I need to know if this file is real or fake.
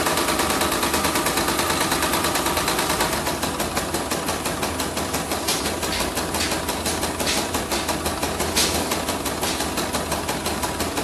real